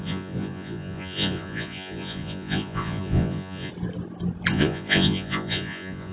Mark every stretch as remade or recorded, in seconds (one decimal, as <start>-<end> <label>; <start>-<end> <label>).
0.0-3.7 remade; 3.7-4.5 recorded; 4.5-6.1 remade